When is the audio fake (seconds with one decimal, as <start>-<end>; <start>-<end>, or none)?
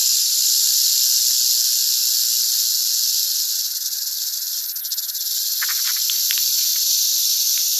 0.0-0.9; 6.7-7.8